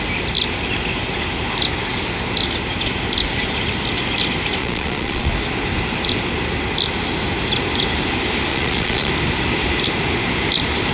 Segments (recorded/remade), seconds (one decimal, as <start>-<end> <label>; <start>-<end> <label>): 0.0-4.6 recorded; 4.6-5.3 remade; 5.3-8.5 recorded; 8.5-9.1 remade; 9.1-10.9 recorded